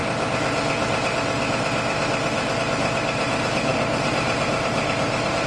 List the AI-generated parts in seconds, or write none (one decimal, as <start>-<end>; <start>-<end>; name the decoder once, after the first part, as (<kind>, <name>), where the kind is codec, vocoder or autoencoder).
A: 3.7-5.5 (vocoder, BigVGAN v2)